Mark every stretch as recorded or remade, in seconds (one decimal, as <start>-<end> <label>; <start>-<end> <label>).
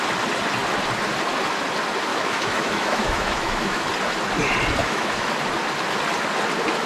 0.0-2.1 recorded; 2.1-3.9 remade; 3.9-4.8 recorded; 4.8-5.3 remade; 5.3-6.9 recorded